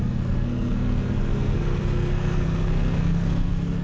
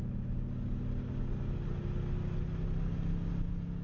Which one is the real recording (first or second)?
second